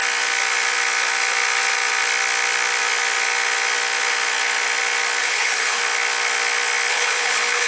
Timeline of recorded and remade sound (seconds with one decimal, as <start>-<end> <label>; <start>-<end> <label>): 0.0-5.2 recorded; 5.2-5.8 remade; 5.8-6.9 recorded; 6.9-7.7 remade

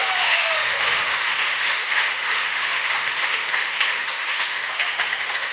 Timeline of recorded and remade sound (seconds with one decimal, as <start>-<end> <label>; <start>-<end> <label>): 0.0-5.5 remade

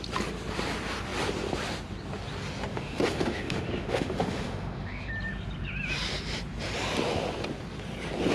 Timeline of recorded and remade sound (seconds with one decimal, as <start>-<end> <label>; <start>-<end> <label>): 0.0-2.7 recorded; 2.7-5.1 remade; 5.1-8.3 recorded

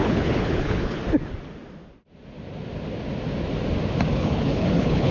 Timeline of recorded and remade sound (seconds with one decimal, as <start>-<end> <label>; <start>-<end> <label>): 0.0-1.0 remade; 1.0-4.1 recorded; 4.1-5.1 remade

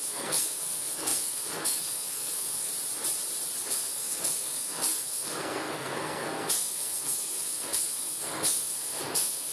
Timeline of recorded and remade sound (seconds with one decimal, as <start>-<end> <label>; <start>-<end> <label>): 0.0-2.7 remade; 2.7-3.7 recorded; 3.7-9.5 remade